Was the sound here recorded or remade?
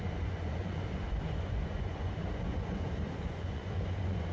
remade